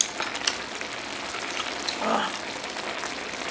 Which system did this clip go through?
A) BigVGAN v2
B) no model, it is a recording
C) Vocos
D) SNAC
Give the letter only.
B